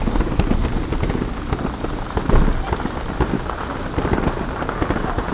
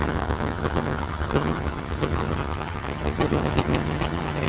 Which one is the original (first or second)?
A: first